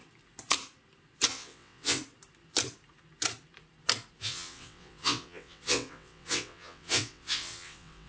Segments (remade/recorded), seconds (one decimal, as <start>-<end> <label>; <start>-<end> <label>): 0.0-1.3 recorded; 1.3-2.0 remade; 2.0-4.2 recorded; 4.2-8.1 remade